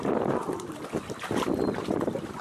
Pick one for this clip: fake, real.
real